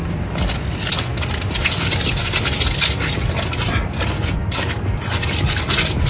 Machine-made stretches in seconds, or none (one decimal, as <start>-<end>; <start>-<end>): none